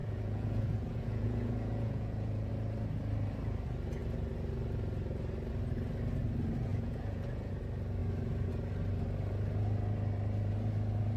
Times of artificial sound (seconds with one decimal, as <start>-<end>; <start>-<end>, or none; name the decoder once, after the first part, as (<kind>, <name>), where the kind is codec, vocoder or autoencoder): 0.0-2.5 (vocoder, Vocos); 6.7-7.5